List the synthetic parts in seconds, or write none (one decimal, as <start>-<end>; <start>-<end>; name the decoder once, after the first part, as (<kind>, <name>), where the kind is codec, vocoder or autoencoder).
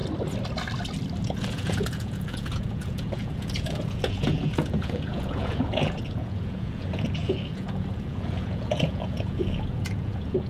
1.2-10.5 (vocoder, Vocos)